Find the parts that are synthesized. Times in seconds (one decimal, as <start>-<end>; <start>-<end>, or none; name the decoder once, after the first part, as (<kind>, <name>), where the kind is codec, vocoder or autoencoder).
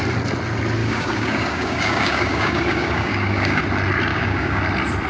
0.8-3.6 (codec, DAC); 4.1-4.6